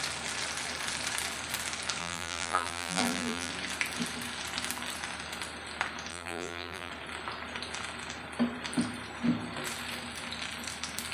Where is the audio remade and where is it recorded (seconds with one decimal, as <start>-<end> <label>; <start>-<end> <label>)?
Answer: 0.0-2.0 recorded; 2.0-3.5 remade; 3.5-6.1 recorded; 6.1-6.9 remade; 6.9-11.1 recorded